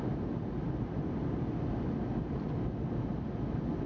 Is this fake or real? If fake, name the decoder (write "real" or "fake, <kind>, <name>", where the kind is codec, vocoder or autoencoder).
real